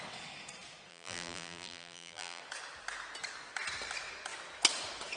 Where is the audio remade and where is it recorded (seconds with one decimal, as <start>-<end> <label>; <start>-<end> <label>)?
0.0-0.9 recorded; 0.9-2.4 remade; 2.4-5.2 recorded